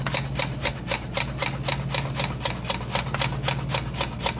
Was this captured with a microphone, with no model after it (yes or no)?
yes